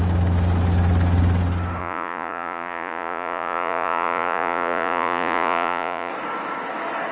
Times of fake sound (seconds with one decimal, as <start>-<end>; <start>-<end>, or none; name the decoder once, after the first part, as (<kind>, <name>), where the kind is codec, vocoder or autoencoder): 1.8-6.1 (vocoder, Vocos)